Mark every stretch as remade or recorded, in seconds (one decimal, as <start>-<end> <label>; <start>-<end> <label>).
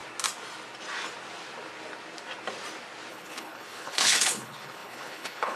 0.0-3.1 recorded; 3.1-5.6 remade